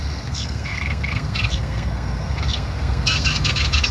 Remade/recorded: remade